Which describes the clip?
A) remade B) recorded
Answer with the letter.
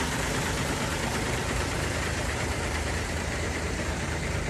A